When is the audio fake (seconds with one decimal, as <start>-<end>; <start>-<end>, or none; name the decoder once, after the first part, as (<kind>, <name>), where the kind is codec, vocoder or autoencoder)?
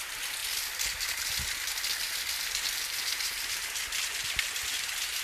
none